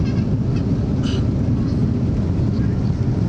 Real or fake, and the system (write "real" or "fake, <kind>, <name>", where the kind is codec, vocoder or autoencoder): real